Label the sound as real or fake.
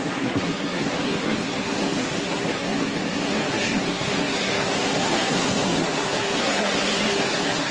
fake